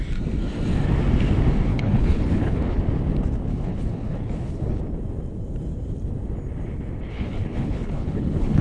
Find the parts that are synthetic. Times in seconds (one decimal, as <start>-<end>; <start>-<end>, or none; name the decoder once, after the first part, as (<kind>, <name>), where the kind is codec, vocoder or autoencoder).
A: 1.7-2.8 (codec, HILCodec); 3.5-4.8; 7.1-8.6